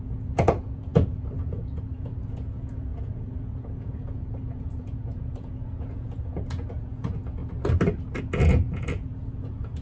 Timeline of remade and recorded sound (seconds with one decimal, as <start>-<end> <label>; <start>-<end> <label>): 0.0-7.4 remade; 7.4-8.2 recorded; 8.2-9.8 remade

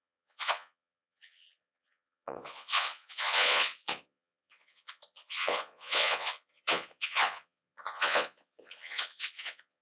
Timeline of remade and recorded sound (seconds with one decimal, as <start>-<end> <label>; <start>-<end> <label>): 0.0-9.8 remade

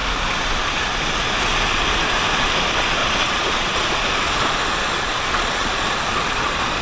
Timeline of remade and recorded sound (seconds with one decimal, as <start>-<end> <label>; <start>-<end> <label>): 0.0-3.0 recorded; 3.0-4.1 remade; 4.1-4.8 recorded; 4.8-6.8 remade

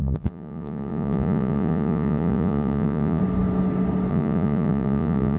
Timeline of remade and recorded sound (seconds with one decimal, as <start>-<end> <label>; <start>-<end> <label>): 0.0-3.2 remade; 3.2-4.1 recorded; 4.1-5.4 remade